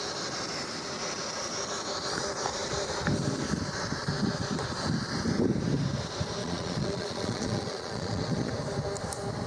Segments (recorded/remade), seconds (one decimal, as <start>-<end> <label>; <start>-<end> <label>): 0.0-6.4 recorded; 6.4-8.5 remade; 8.5-9.5 recorded